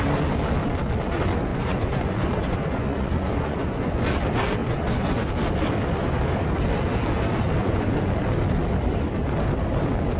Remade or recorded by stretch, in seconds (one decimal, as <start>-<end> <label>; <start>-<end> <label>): 0.0-1.5 recorded; 1.5-4.1 remade; 4.1-4.6 recorded; 4.6-5.3 remade; 5.3-7.6 recorded; 7.6-8.1 remade; 8.1-10.2 recorded